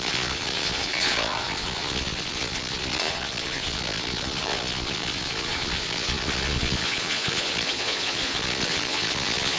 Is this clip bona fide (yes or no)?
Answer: no